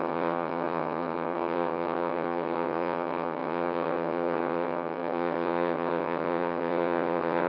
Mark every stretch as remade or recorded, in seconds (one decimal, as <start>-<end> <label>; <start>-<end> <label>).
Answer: 0.0-7.5 remade